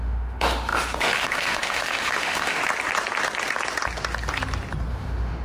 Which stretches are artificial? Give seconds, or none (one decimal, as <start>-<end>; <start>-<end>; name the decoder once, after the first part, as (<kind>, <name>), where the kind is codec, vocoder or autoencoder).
0.0-2.6 (autoencoder, DAC-VAE); 4.9-5.4